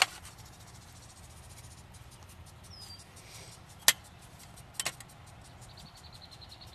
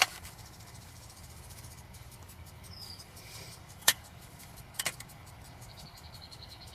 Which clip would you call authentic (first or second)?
first